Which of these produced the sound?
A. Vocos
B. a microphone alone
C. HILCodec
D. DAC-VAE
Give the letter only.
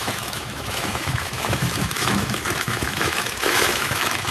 D